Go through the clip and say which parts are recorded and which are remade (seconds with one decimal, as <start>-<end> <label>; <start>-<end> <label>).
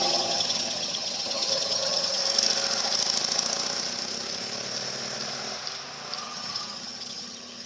0.0-2.2 remade; 2.2-6.2 recorded; 6.2-7.7 remade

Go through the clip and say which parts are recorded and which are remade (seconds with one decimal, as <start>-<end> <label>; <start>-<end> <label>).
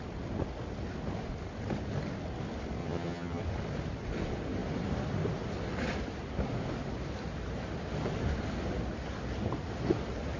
0.0-2.8 recorded; 2.8-3.4 remade; 3.4-10.4 recorded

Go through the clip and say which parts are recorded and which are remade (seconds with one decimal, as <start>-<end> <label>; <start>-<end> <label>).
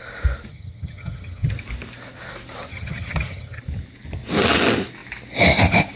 0.0-0.5 recorded; 0.5-1.5 remade; 1.5-2.7 recorded; 2.7-3.6 remade; 3.6-6.0 recorded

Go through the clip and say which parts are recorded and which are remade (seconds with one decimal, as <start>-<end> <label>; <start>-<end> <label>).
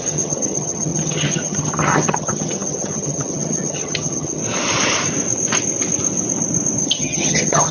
0.0-4.4 remade; 4.4-6.8 recorded; 6.8-7.7 remade